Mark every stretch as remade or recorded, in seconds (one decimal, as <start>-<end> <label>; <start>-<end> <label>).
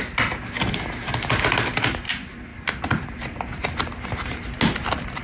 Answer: 0.0-2.5 recorded; 2.5-4.0 remade; 4.0-5.2 recorded